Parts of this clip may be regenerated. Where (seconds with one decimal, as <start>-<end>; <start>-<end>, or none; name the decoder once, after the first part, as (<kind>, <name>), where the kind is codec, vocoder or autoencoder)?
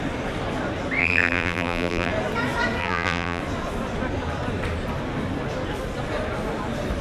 1.0-2.1 (vocoder, BigVGAN v2); 2.8-3.4